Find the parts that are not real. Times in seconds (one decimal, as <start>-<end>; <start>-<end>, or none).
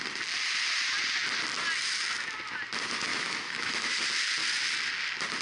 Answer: 3.1-4.0